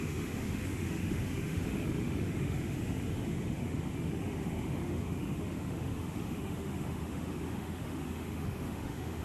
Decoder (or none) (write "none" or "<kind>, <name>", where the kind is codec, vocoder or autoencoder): autoencoder, DAC-VAE